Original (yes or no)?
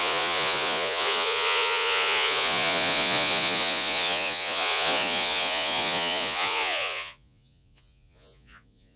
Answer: no